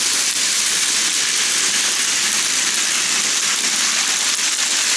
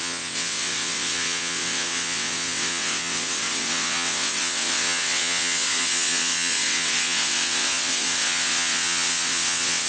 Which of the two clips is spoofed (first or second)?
second